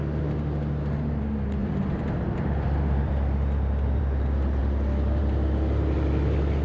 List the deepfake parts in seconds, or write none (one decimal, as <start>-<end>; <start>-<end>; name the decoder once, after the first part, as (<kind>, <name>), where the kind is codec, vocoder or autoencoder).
1.6-4.0 (vocoder, BigVGAN v2); 4.6-5.2